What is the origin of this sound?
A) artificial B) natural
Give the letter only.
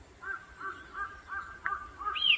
B